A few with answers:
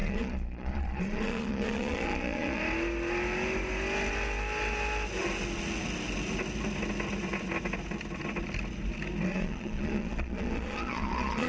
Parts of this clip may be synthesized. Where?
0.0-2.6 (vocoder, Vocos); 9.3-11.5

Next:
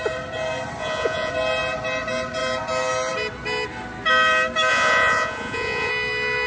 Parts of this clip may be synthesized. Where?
0.8-1.3 (vocoder, Vocos); 4.7-5.9

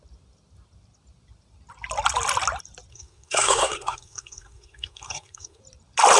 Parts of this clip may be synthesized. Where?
2.9-5.6 (codec, SNAC)

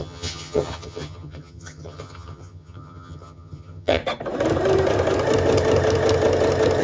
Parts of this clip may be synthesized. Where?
0.0-4.0 (vocoder, HiFi-GAN)